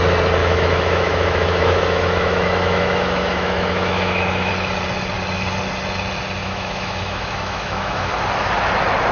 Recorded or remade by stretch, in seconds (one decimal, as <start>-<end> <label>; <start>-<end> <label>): 0.0-0.4 recorded; 0.4-4.5 remade; 4.5-6.4 recorded; 6.4-8.1 remade; 8.1-9.1 recorded